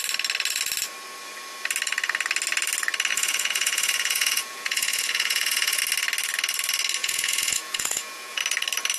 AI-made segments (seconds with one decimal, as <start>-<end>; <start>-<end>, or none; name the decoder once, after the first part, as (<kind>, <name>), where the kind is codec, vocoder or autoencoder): 3.1-5.8 (vocoder, Vocos); 7.0-8.4